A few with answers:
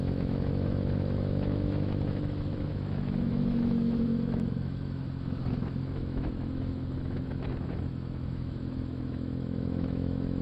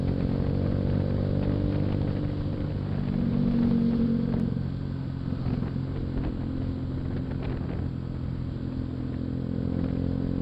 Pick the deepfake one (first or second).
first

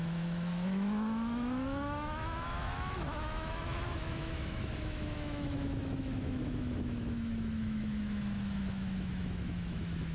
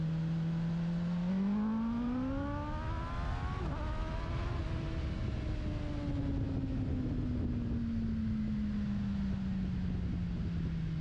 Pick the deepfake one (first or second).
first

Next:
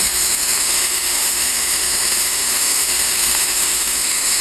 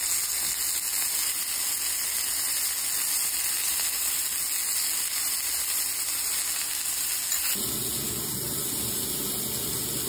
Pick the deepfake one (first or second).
first